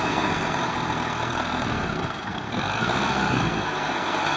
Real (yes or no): no